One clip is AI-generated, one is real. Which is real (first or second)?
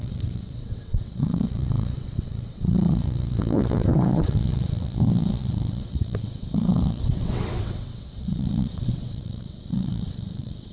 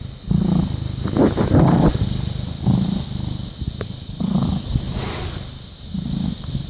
second